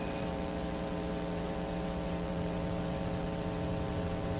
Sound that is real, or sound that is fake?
fake